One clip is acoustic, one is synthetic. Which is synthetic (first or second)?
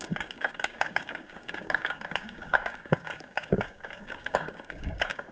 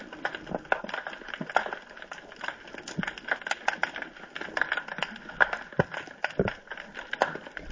first